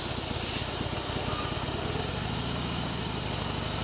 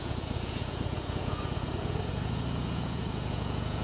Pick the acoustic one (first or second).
first